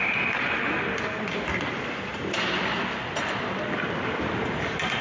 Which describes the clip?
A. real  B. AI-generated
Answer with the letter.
A